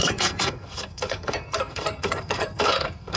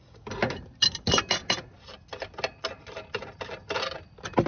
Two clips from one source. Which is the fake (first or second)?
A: first